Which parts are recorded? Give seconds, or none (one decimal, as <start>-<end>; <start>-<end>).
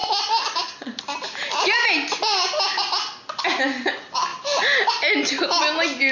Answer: 0.0-6.1